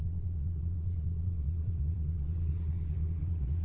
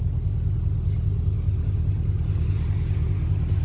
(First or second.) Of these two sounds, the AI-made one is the first